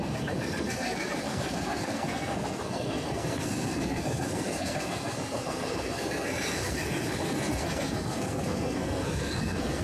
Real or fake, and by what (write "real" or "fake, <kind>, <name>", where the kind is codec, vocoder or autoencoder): fake, codec, SNAC